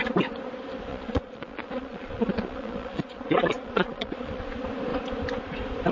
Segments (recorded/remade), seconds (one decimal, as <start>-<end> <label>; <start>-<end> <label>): 0.0-0.9 recorded; 0.9-4.4 remade; 4.4-5.9 recorded